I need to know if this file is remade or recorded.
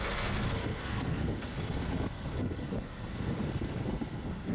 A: remade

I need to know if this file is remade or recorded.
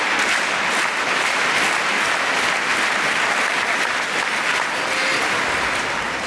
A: recorded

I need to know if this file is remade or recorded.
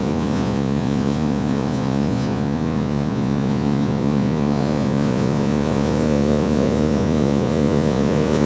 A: remade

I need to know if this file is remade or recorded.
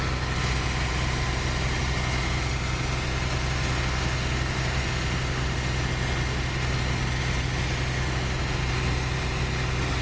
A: recorded